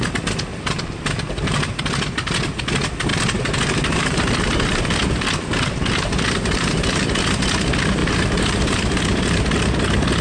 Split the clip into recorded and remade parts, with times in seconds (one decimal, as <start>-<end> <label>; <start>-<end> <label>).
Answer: 0.0-0.5 recorded; 0.5-1.8 remade; 1.8-3.1 recorded; 3.1-7.4 remade; 7.4-8.0 recorded; 8.0-9.0 remade; 9.0-10.2 recorded